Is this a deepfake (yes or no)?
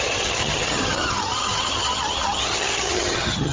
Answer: yes